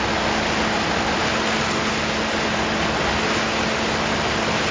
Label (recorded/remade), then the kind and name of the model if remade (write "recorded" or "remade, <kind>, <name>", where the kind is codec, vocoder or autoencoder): recorded